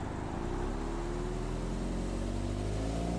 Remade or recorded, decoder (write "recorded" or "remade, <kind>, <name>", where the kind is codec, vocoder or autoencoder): recorded